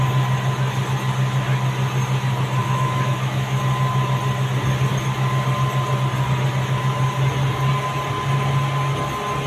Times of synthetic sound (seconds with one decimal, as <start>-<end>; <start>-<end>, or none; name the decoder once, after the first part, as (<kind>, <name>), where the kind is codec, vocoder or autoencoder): 2.6-3.6 (autoencoder, DAC-VAE)